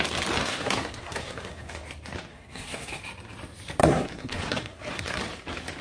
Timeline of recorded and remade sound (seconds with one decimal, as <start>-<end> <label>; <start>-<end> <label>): 0.0-0.4 recorded; 0.4-1.7 remade; 1.7-2.3 recorded; 2.3-3.0 remade; 3.0-3.8 recorded; 3.8-5.2 remade; 5.2-5.8 recorded